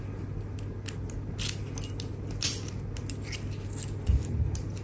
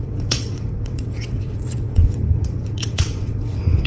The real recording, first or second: first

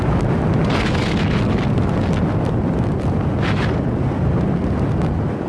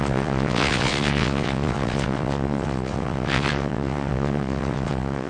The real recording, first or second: first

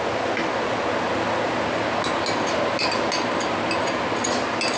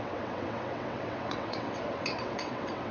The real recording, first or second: first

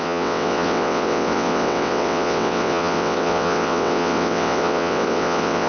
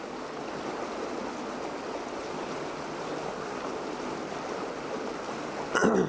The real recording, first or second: second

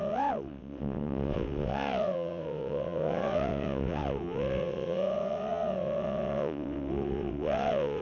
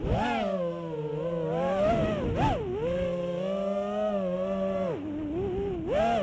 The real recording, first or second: second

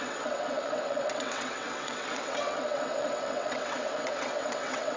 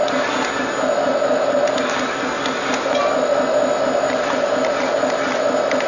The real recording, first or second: second